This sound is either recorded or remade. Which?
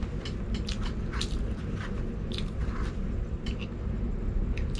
recorded